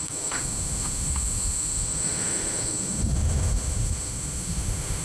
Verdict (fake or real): fake